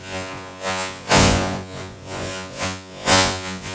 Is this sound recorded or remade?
remade